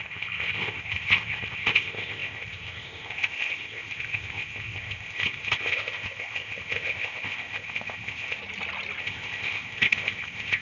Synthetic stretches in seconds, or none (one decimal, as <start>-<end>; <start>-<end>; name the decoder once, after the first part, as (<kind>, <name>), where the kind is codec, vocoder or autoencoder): 0.0-8.4 (codec, ZipCodec); 9.0-10.6